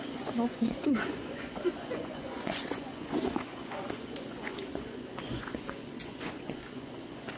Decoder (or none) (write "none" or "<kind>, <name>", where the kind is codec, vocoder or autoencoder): vocoder, Vocos